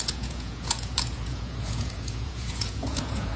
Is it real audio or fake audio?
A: fake